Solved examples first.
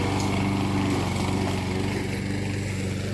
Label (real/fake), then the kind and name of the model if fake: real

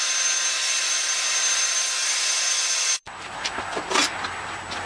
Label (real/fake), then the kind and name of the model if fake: fake, vocoder, BigVGAN v2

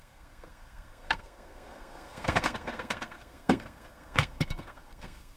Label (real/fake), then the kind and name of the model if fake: fake, codec, SNAC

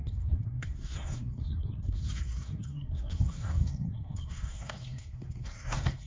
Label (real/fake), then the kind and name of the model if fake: fake, codec, SNAC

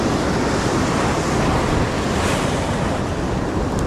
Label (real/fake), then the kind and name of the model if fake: real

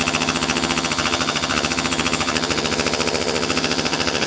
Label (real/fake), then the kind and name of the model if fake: fake, vocoder, HiFi-GAN